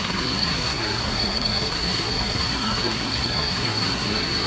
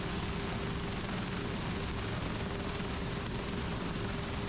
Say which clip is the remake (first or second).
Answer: first